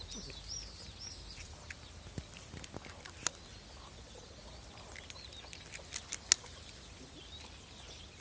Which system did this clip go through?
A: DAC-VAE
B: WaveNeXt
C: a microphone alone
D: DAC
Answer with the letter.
C